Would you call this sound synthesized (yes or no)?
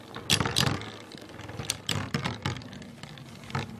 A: no